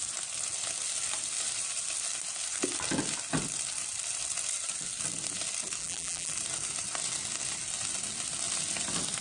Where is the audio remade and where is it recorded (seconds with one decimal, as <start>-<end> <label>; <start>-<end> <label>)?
0.0-5.8 recorded; 5.8-6.3 remade; 6.3-9.2 recorded